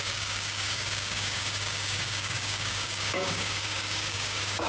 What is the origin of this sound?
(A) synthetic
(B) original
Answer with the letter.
A